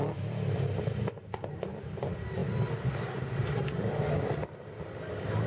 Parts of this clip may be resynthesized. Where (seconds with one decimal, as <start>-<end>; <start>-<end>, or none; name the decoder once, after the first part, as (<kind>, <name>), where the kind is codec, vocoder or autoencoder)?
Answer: none